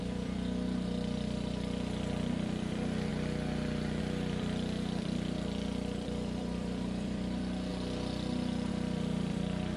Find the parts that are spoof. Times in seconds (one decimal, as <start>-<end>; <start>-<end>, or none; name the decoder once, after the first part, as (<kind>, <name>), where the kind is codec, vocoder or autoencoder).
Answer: 0.0-3.1 (vocoder, BigVGAN v2); 4.0-7.7; 8.7-9.8